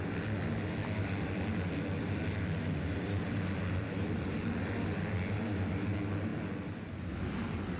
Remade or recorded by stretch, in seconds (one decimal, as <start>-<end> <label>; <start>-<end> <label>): 0.0-0.8 recorded; 0.8-4.8 remade; 4.8-6.3 recorded; 6.3-7.1 remade; 7.1-7.8 recorded